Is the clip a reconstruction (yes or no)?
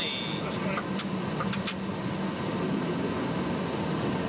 no